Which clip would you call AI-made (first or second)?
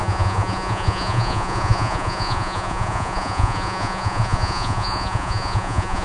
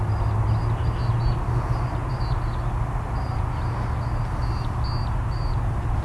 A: first